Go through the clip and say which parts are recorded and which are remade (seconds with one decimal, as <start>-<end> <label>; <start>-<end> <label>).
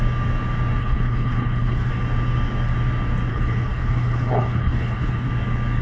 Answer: 0.0-0.8 recorded; 0.8-1.9 remade; 1.9-3.3 recorded; 3.3-5.3 remade; 5.3-5.8 recorded